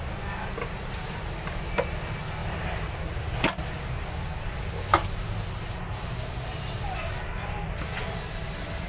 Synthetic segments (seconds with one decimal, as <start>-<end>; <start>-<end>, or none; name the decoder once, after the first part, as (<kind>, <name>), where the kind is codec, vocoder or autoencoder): 2.4-3.0 (vocoder, BigVGAN v2)